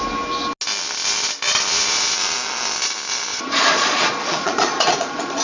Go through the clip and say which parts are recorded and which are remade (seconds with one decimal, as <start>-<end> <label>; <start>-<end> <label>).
0.0-3.3 recorded; 3.3-5.4 remade